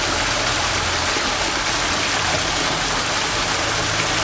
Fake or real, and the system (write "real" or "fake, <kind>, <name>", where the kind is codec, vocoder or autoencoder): real